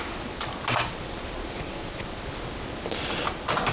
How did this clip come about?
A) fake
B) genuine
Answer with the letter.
B